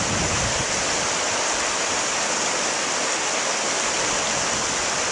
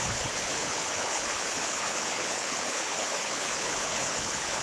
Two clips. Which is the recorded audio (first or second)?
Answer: first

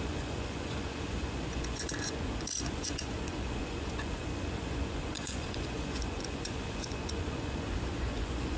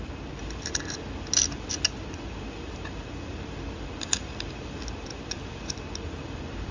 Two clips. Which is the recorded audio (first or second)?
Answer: second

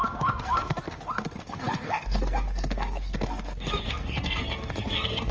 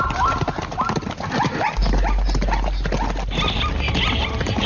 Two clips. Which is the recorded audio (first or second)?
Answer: second